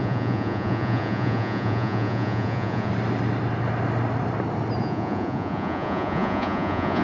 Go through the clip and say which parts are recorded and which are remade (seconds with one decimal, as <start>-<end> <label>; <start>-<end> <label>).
0.0-2.9 remade; 2.9-4.8 recorded; 4.8-7.0 remade